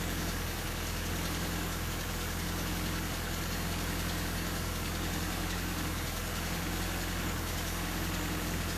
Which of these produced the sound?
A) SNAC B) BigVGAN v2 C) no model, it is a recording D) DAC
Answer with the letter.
D